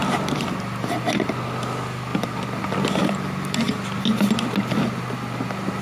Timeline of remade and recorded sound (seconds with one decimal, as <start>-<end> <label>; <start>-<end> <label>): 0.0-0.9 remade; 0.9-5.8 recorded